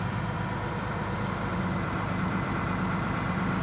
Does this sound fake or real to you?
fake